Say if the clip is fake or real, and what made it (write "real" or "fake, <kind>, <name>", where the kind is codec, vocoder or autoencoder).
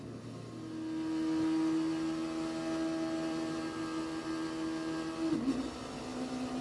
real